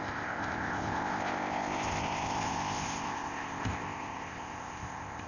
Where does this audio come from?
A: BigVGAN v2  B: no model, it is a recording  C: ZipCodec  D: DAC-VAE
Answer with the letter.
C